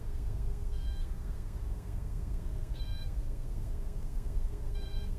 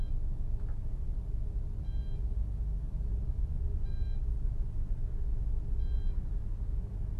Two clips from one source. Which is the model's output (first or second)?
first